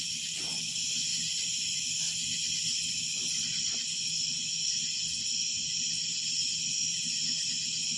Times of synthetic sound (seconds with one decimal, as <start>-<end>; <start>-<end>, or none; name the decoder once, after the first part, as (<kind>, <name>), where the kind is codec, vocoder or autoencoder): none